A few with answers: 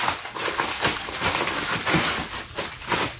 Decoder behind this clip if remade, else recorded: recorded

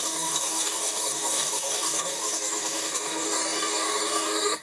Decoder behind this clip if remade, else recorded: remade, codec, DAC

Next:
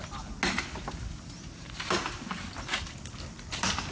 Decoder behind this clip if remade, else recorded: recorded